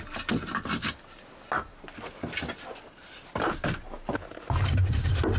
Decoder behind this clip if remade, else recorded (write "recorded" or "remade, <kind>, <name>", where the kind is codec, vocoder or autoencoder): recorded